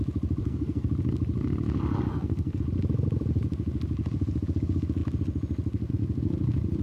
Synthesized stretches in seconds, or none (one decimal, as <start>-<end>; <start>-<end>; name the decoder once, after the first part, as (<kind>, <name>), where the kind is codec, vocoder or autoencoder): 0.4-0.9 (codec, SNAC); 2.1-2.6